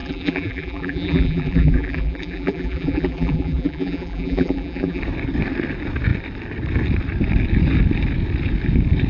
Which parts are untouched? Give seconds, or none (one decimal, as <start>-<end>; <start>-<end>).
5.0-9.1